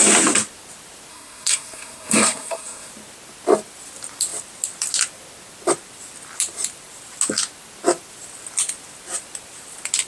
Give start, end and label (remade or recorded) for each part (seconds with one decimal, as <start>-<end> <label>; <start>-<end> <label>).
0.0-1.1 recorded; 1.1-2.9 remade; 2.9-10.1 recorded